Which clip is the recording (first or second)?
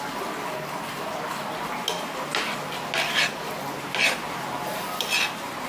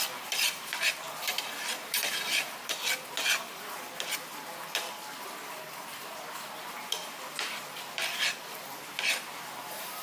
first